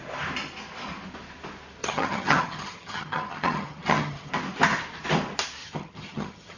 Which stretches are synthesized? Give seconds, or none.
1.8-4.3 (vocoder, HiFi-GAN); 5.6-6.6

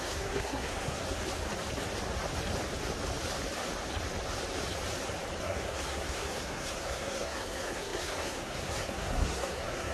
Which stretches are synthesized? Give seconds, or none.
0.0-1.0 (codec, SNAC); 5.4-9.9

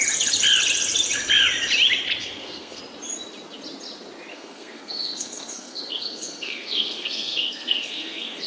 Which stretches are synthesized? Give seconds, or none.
2.2-2.8 (codec, SNAC); 4.3-8.5

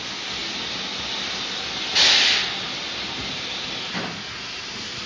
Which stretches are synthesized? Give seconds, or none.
none

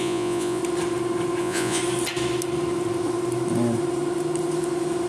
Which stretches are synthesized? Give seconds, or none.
0.0-0.6 (vocoder, Vocos); 1.4-1.8